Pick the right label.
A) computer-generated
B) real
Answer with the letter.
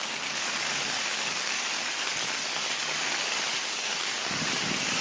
A